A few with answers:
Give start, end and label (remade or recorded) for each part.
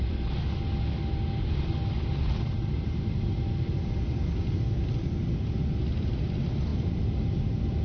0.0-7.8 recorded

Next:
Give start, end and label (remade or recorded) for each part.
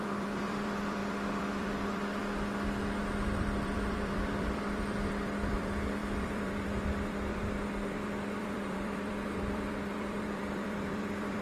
0.0-2.2 remade; 2.2-3.0 recorded; 3.0-11.4 remade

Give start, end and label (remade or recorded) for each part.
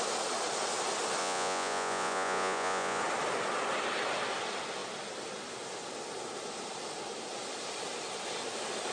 0.0-1.2 recorded; 1.2-3.0 remade; 3.0-8.9 recorded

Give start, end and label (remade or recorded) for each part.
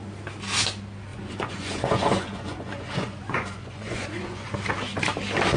0.0-1.1 recorded; 1.1-4.5 remade; 4.5-5.6 recorded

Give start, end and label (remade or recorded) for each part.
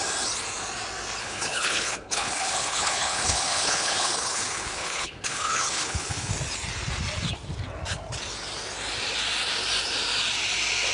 0.0-1.2 recorded; 1.2-6.3 remade; 6.3-10.9 recorded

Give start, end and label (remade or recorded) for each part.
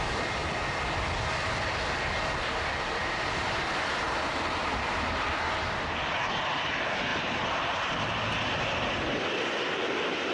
0.0-4.6 recorded; 4.6-5.6 remade; 5.6-7.1 recorded; 7.1-7.9 remade; 7.9-10.3 recorded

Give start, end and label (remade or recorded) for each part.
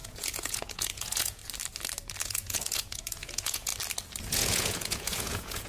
0.0-1.4 remade; 1.4-2.2 recorded; 2.2-3.7 remade; 3.7-4.2 recorded; 4.2-5.7 remade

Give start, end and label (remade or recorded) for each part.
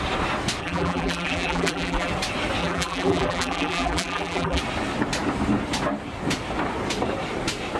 0.0-0.6 recorded; 0.6-2.1 remade; 2.1-2.6 recorded; 2.6-4.6 remade; 4.6-7.8 recorded